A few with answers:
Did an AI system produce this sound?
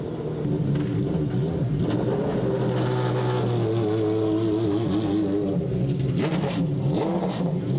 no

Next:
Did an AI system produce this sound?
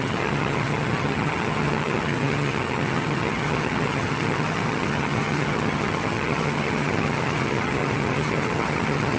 yes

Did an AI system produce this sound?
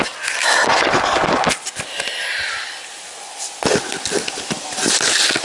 no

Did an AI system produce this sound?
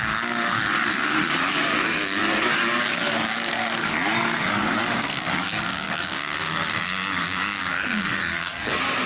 yes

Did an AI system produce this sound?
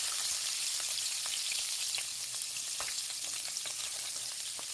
no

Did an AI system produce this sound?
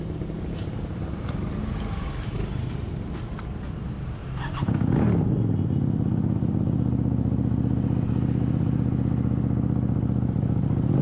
no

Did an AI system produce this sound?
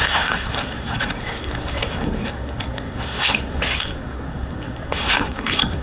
yes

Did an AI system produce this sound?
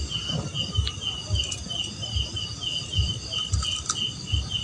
no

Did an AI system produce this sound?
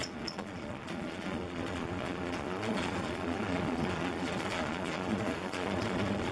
yes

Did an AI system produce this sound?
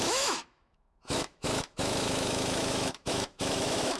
yes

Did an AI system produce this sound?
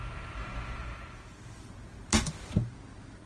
no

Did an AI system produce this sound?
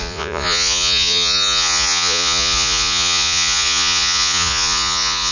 yes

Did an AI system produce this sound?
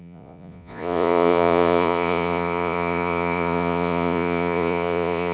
yes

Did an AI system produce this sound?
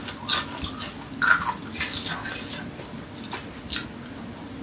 no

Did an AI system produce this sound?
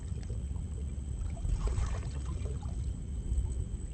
yes